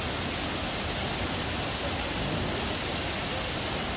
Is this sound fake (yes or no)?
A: no